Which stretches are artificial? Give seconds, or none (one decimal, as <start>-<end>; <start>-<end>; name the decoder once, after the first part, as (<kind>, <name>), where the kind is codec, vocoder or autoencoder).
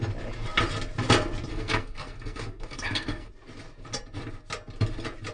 1.5-3.3 (codec, SNAC)